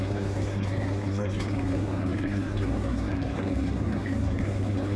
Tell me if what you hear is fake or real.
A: fake